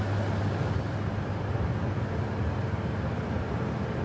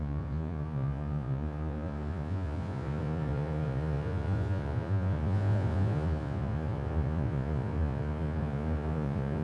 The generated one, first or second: second